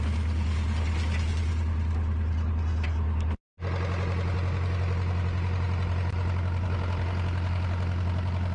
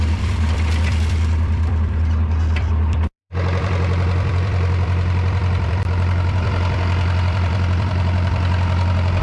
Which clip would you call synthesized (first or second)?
second